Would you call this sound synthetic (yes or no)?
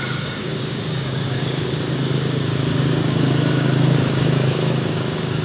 yes